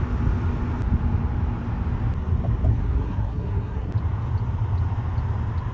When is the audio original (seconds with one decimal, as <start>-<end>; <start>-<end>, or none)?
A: 0.0-2.7; 3.9-5.7